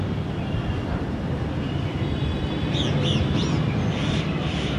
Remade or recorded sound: remade